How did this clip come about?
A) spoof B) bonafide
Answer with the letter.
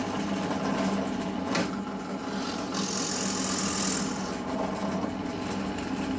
B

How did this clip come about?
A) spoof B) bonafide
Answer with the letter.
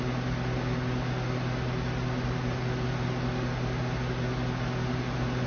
B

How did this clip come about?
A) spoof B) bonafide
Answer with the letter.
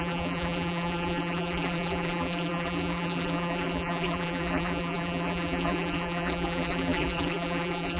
A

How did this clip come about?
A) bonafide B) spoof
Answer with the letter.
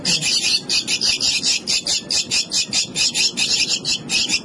A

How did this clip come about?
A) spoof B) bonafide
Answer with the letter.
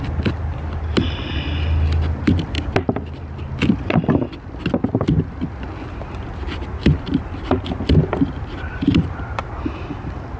B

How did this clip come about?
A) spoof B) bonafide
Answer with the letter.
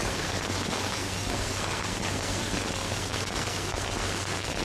A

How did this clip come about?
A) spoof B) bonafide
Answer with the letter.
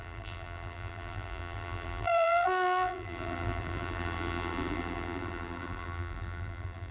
A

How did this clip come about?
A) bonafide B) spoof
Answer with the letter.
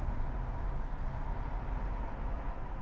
A